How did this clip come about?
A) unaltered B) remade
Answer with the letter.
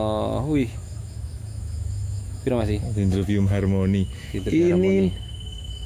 B